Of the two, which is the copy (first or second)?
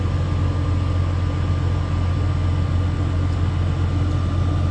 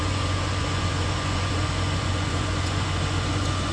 second